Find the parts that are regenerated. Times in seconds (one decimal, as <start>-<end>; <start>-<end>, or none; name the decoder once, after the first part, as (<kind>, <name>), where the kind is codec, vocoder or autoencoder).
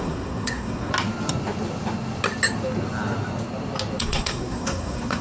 0.0-0.9 (codec, SNAC); 4.0-5.2